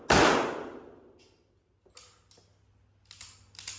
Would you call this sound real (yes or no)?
yes